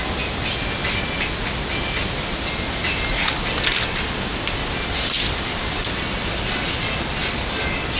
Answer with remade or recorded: recorded